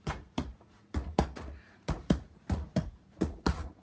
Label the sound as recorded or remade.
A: remade